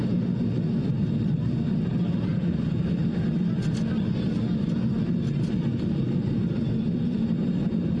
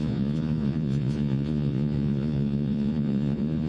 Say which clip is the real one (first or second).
first